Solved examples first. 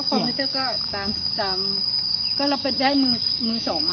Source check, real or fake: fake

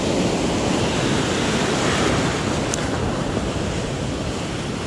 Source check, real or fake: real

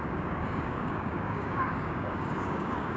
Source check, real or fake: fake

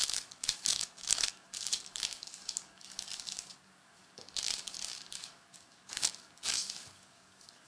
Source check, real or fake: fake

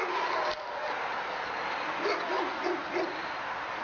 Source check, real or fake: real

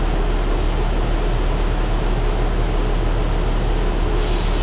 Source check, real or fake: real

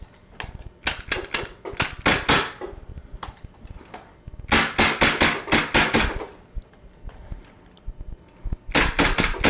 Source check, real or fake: real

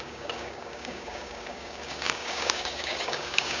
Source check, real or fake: fake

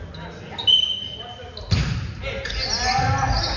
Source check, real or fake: real